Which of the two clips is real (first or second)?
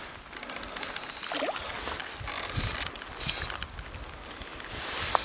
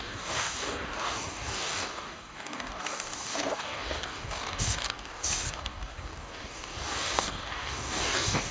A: first